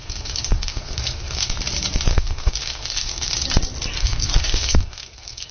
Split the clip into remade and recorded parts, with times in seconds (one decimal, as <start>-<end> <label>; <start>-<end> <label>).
0.0-1.5 remade; 1.5-2.1 recorded; 2.1-3.3 remade; 3.3-3.9 recorded; 3.9-5.5 remade